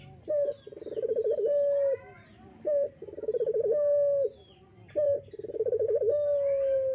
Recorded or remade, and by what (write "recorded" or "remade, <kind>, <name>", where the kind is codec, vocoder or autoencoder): recorded